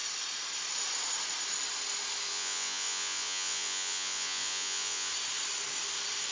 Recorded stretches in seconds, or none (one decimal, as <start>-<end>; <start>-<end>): 0.0-2.3; 5.1-6.3